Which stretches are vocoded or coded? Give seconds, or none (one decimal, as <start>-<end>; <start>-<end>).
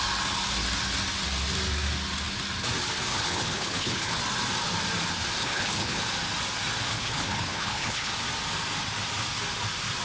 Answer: 3.1-4.2; 5.4-6.0; 6.9-8.1